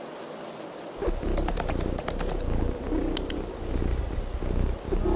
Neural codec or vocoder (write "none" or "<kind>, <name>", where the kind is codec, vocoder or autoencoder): none